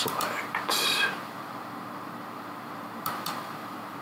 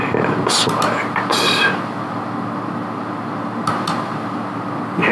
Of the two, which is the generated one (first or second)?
first